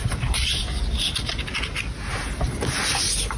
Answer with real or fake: real